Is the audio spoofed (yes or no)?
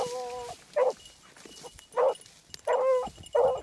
no